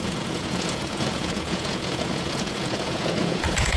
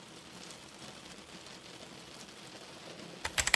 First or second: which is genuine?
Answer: second